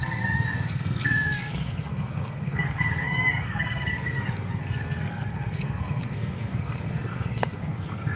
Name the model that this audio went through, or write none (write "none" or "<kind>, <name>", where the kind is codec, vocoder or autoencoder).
codec, SNAC